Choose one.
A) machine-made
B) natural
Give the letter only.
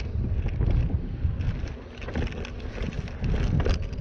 B